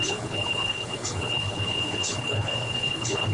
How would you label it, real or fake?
fake